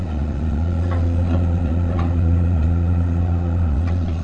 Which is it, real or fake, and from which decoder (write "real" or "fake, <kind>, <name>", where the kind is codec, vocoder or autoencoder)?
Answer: fake, vocoder, Vocos